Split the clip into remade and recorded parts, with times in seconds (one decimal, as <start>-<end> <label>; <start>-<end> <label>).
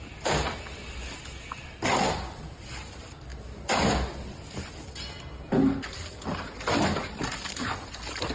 0.0-8.3 recorded